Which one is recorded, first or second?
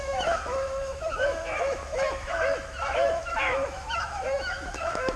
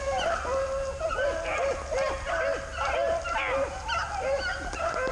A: second